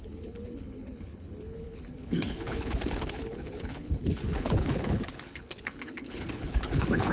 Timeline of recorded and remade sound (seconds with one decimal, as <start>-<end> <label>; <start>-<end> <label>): 0.0-7.1 remade